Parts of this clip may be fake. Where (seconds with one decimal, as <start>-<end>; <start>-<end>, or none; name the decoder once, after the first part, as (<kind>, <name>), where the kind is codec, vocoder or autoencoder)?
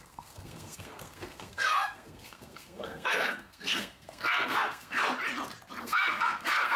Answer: 0.0-5.0 (codec, SNAC); 5.8-6.8